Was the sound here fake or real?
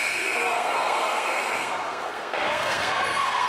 fake